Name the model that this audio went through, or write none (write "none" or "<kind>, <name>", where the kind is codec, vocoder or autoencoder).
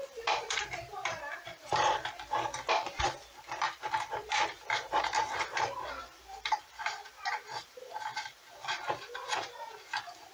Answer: vocoder, BigVGAN v2